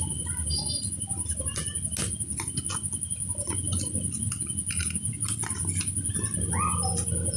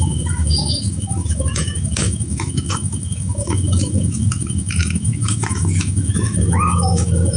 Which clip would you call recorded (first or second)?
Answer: first